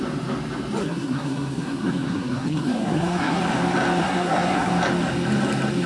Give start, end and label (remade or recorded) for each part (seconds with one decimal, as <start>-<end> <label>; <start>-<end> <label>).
0.0-0.8 recorded; 0.8-3.4 remade; 3.4-4.0 recorded; 4.0-4.7 remade; 4.7-5.9 recorded